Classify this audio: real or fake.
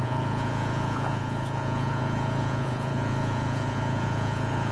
fake